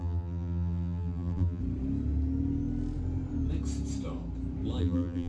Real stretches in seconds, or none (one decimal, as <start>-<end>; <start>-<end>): 1.6-4.8